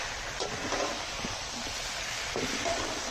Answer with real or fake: real